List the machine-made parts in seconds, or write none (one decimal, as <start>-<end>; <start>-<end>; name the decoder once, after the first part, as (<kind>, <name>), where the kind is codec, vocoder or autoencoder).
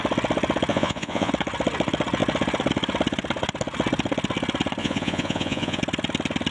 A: 0.7-1.3 (vocoder, Vocos); 4.8-5.8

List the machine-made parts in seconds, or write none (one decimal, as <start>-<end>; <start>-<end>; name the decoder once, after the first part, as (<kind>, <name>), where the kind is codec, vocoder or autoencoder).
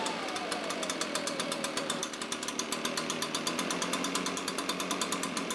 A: none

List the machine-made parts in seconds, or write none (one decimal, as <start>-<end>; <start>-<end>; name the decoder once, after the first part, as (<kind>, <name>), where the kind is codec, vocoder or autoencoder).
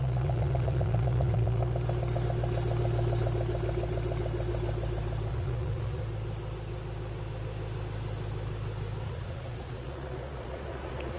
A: 0.0-1.6 (vocoder, Vocos); 5.3-6.0; 9.0-11.2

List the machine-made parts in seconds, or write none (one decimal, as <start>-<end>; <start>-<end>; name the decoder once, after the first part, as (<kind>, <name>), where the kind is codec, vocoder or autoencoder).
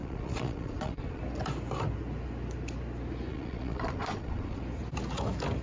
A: 0.0-1.2 (vocoder, Vocos); 3.3-4.6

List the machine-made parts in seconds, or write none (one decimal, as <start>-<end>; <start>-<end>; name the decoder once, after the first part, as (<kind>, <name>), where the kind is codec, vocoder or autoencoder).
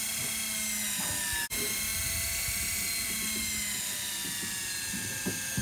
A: none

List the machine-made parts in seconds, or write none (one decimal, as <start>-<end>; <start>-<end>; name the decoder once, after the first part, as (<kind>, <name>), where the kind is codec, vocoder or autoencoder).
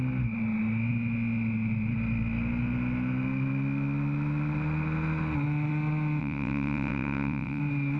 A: 6.2-7.6 (vocoder, WaveNeXt)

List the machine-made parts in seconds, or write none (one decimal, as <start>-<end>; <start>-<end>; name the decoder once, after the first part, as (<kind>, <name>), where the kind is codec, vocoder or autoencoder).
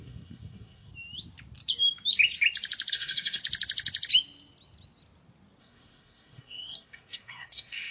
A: 0.0-0.9 (codec, SNAC); 2.9-3.4; 5.6-7.9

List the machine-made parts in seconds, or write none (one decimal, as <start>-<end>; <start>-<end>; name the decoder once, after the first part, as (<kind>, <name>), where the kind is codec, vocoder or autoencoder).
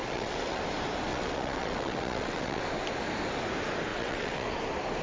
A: 0.0-0.6 (vocoder, WaveNeXt); 1.1-2.6; 3.9-4.5